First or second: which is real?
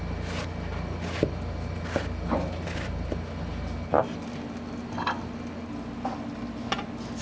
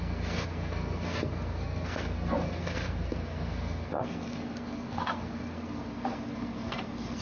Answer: first